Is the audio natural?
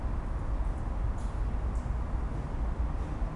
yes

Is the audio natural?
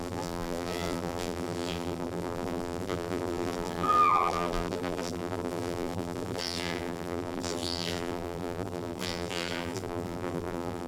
no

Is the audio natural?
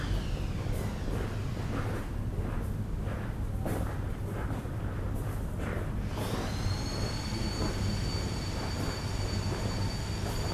yes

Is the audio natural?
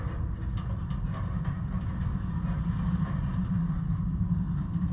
yes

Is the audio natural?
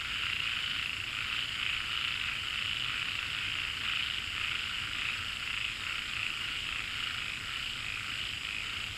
yes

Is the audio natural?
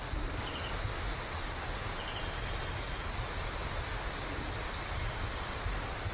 yes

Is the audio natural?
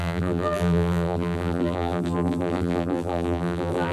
no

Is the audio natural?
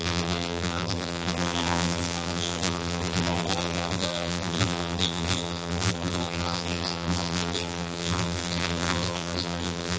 no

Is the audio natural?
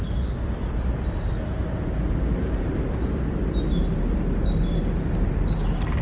yes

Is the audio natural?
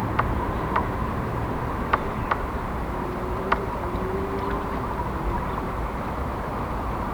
no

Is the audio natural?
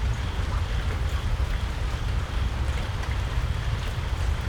yes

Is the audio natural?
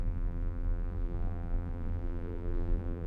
no